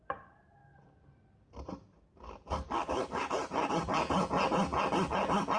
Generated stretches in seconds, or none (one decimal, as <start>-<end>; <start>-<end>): none